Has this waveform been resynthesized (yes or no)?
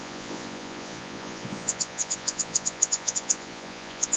yes